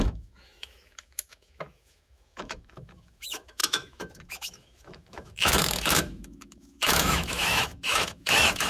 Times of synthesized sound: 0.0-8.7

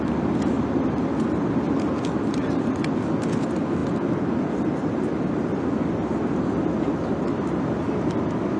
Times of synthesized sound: none